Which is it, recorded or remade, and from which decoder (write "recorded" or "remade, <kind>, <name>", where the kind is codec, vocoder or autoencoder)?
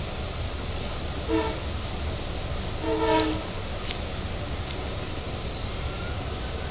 recorded